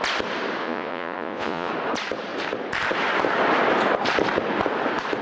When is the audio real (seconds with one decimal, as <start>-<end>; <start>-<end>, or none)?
0.0-0.6; 1.7-5.2